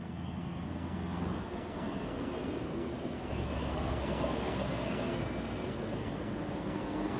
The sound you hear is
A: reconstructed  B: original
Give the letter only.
A